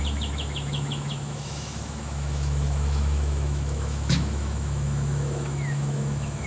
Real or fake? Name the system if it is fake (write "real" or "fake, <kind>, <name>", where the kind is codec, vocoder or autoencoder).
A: fake, autoencoder, DAC-VAE